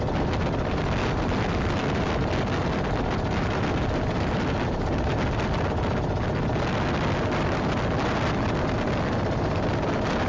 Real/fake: real